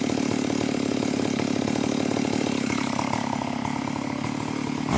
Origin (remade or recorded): recorded